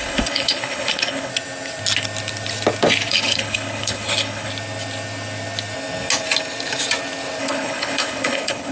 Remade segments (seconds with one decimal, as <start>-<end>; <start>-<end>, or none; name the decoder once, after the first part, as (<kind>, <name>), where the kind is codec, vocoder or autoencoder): 0.0-1.3 (codec, HILCodec); 3.1-4.5; 7.4-8.7